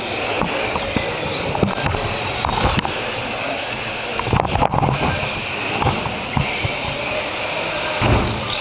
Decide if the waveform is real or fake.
real